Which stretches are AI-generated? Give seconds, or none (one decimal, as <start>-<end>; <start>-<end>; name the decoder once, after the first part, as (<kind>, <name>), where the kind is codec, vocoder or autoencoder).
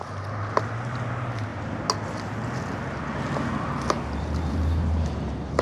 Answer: 0.0-1.5 (vocoder, BigVGAN v2); 4.2-5.6